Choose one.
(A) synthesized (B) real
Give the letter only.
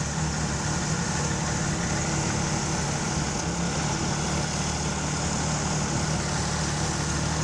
B